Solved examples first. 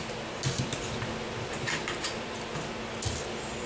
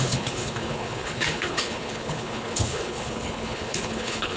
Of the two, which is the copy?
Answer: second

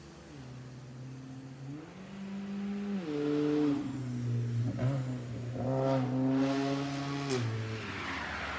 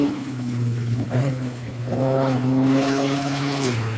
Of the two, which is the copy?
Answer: second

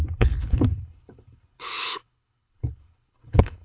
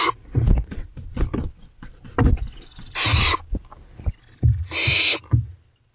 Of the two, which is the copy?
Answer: first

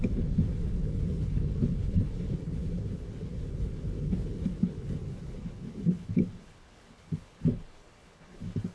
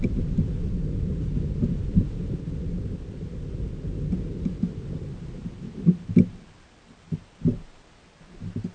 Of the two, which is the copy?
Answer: first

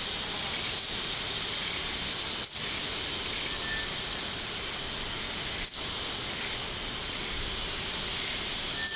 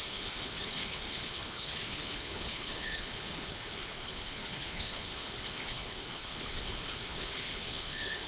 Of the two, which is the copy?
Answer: second